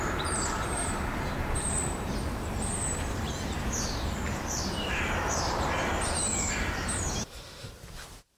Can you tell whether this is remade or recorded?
remade